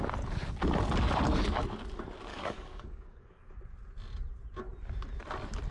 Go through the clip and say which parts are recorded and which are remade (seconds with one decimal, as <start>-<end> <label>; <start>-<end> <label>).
0.0-2.3 recorded; 2.3-3.6 remade; 3.6-5.7 recorded

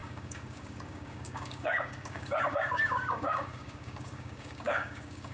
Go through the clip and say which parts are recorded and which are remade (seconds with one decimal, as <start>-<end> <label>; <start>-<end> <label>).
0.0-5.3 remade

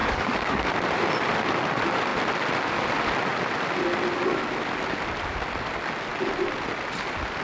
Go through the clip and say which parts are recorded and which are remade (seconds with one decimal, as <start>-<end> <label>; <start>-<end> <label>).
0.0-0.7 remade; 0.7-7.4 recorded